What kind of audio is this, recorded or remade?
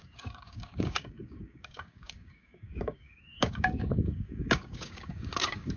remade